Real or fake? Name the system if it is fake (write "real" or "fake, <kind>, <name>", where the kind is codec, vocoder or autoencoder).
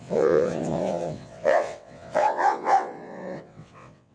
fake, vocoder, WaveNeXt